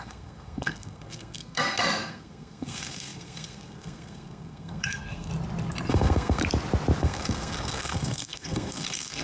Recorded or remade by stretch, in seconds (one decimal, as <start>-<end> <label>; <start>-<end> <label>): 0.0-5.3 remade; 5.3-5.9 recorded; 5.9-6.4 remade; 6.4-7.0 recorded; 7.0-9.2 remade